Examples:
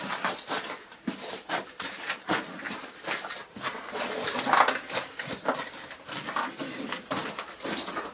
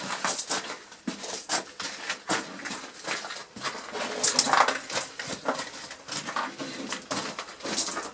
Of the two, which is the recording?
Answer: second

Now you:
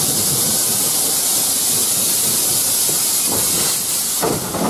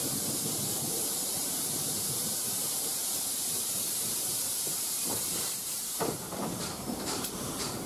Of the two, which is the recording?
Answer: first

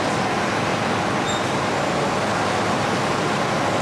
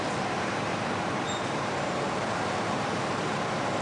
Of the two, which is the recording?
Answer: first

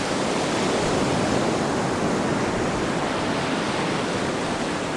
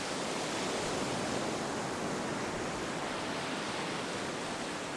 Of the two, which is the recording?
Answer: second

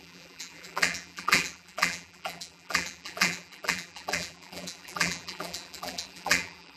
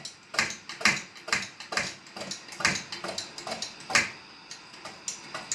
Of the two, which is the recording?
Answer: second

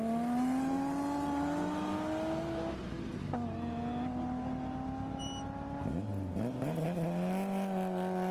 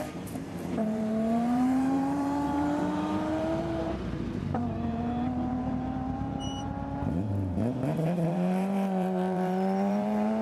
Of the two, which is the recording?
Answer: first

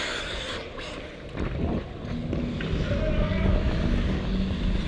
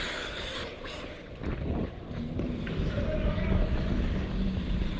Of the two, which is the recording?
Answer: first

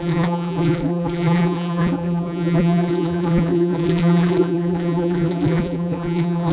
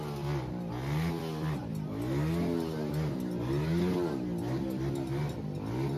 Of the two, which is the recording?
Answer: second